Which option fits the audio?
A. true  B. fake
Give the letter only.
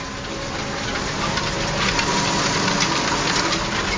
A